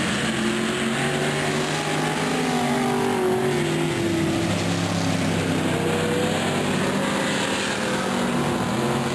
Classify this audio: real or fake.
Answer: real